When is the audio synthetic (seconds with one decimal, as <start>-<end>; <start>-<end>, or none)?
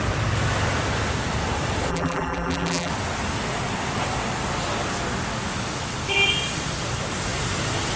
1.9-2.9